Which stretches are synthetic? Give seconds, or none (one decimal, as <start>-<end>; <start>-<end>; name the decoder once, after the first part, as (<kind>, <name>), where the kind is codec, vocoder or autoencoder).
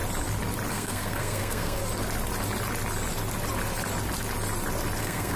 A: 0.7-1.8 (codec, SNAC); 5.0-5.4